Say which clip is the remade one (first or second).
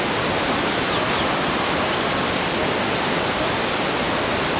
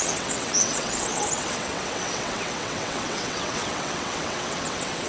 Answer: second